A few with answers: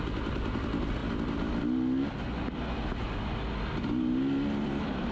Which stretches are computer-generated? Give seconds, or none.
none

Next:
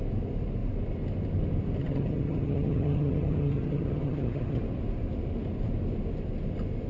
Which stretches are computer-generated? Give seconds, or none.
1.8-4.6 (vocoder, HiFi-GAN)

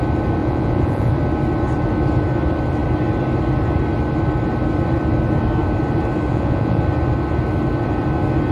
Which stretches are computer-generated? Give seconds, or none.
0.4-1.1 (vocoder, Vocos); 6.3-6.8

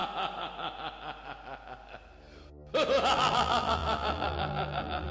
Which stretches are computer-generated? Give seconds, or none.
3.1-5.1 (vocoder, BigVGAN v2)

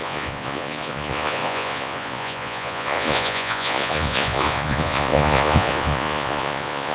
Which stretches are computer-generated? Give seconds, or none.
0.0-6.9 (vocoder, Vocos)

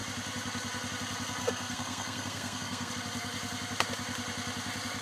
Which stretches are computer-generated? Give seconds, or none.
1.4-2.9 (codec, SNAC)

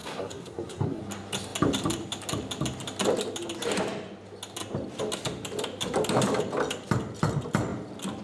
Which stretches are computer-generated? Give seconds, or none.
0.0-1.0 (codec, SNAC)

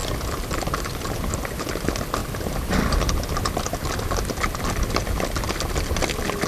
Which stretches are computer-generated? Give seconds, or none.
none